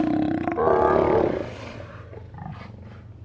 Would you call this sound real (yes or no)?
yes